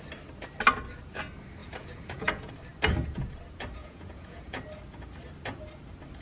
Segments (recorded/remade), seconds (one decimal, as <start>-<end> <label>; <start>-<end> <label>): 0.0-1.6 recorded; 1.6-2.5 remade; 2.5-3.8 recorded; 3.8-4.6 remade; 4.6-6.2 recorded